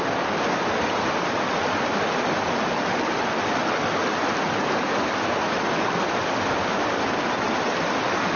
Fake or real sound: real